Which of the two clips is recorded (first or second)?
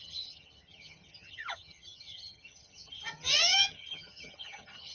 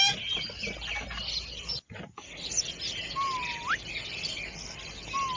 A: second